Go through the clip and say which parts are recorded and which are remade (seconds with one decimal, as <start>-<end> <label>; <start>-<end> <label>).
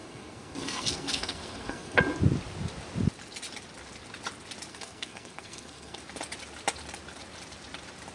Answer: 0.0-2.0 remade; 2.0-4.7 recorded; 4.7-6.0 remade; 6.0-8.1 recorded